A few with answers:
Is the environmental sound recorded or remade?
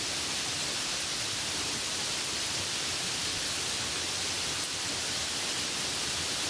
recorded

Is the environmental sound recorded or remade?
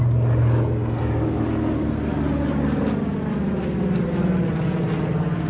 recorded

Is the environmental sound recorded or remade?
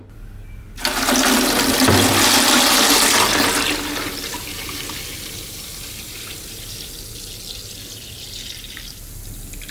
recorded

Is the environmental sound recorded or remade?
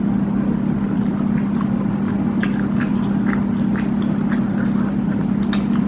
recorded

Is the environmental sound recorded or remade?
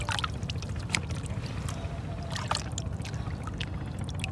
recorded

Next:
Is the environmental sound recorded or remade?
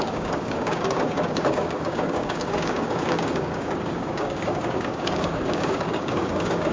remade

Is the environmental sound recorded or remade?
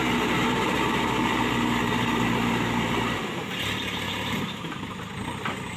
remade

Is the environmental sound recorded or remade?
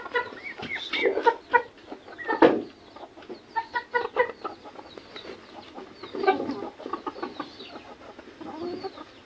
recorded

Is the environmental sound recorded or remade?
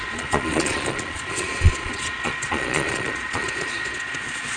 remade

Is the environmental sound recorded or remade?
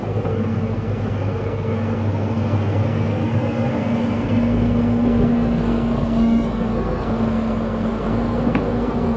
remade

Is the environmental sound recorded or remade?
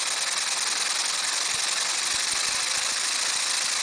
recorded